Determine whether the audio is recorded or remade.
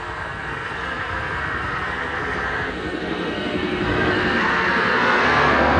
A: remade